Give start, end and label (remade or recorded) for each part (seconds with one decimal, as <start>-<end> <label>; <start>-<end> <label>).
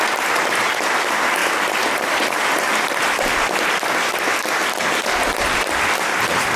0.0-1.4 recorded; 1.4-4.9 remade; 4.9-6.6 recorded